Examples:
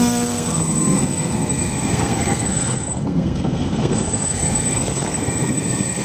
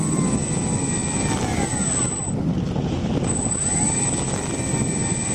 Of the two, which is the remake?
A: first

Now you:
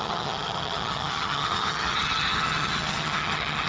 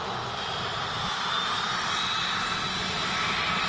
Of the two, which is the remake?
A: first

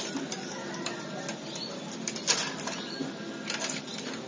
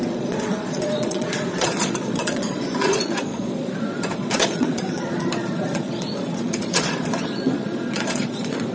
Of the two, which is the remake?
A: second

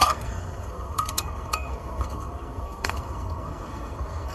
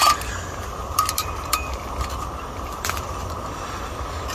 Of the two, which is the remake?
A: first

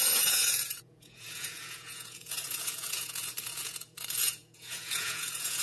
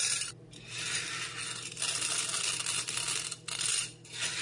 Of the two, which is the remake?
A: first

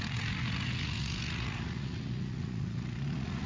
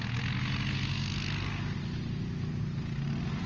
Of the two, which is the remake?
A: first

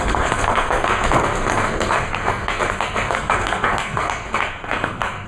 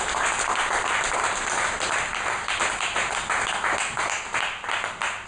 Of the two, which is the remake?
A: first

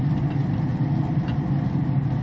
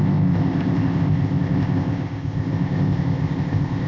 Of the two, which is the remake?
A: second